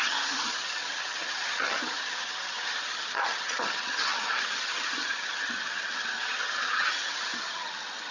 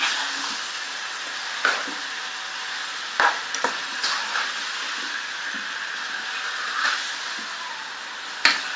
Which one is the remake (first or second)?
first